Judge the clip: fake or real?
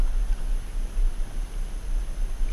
real